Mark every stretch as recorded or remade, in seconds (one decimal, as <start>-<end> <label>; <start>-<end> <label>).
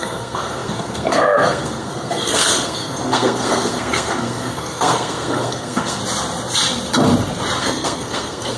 0.0-6.0 remade; 6.0-7.6 recorded; 7.6-8.6 remade